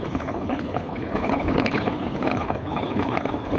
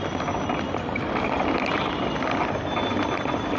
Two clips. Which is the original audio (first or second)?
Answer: second